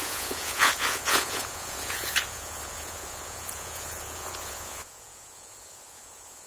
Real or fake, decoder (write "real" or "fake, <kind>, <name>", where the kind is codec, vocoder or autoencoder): fake, vocoder, Vocos